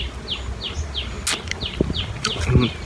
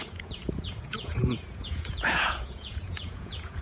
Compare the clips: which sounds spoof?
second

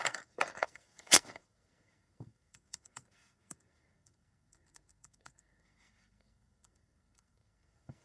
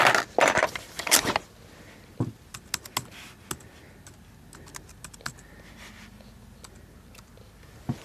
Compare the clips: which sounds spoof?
first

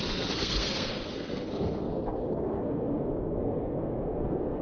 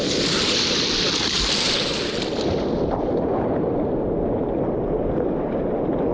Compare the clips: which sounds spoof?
first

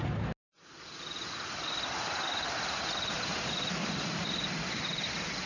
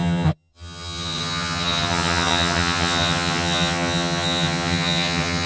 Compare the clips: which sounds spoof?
second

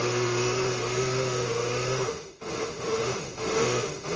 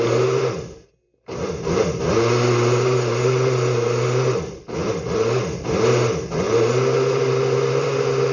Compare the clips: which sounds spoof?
first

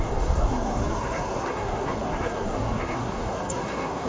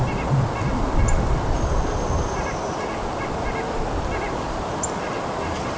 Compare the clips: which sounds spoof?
first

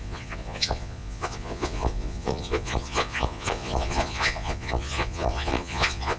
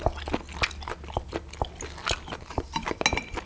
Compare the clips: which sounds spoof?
first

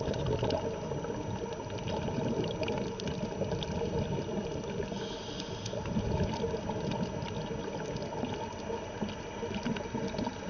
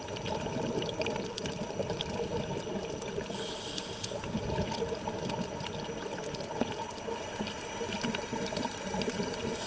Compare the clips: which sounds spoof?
second